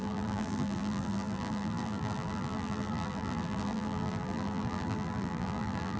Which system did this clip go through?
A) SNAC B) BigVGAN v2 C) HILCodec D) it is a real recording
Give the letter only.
B